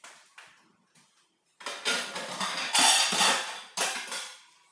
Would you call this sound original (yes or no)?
yes